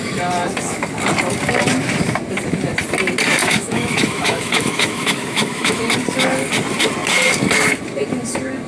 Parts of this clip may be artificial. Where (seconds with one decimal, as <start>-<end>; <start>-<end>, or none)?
3.4-5.8